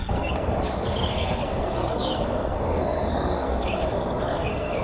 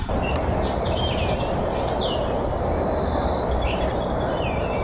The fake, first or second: first